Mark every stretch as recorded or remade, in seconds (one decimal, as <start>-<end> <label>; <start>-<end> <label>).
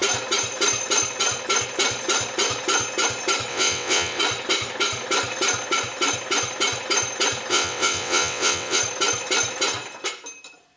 0.0-3.5 recorded; 3.5-4.2 remade; 4.2-7.5 recorded; 7.5-8.8 remade; 8.8-10.8 recorded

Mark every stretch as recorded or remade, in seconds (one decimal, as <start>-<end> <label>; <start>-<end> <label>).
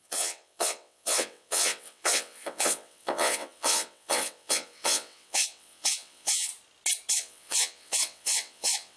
0.0-6.5 remade; 6.5-7.1 recorded; 7.1-9.0 remade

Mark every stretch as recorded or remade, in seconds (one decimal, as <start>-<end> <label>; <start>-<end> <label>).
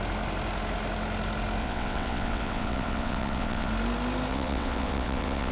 0.0-1.6 recorded; 1.6-3.7 remade; 3.7-4.3 recorded; 4.3-5.5 remade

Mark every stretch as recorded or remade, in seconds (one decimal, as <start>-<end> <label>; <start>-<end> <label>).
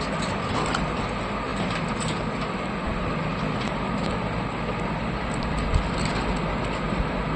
0.0-7.4 recorded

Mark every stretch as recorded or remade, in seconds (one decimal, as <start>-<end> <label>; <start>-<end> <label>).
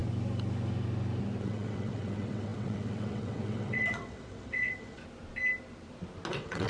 0.0-1.4 recorded; 1.4-5.0 remade; 5.0-6.3 recorded; 6.3-6.7 remade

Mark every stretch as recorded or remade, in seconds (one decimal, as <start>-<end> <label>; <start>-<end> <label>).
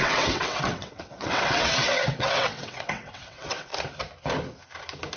0.0-3.7 remade; 3.7-5.2 recorded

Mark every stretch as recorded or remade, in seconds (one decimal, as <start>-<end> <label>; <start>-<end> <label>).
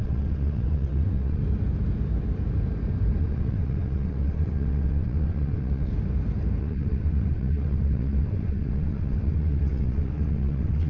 0.0-1.4 remade; 1.4-3.2 recorded; 3.2-5.9 remade; 5.9-6.6 recorded; 6.6-10.9 remade